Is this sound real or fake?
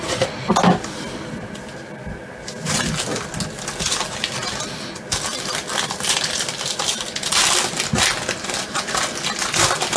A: real